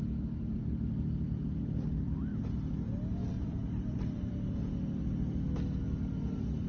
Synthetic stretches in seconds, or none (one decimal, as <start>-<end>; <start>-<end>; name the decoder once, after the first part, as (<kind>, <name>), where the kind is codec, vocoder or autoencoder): 0.6-2.4 (vocoder, BigVGAN v2); 3.2-4.3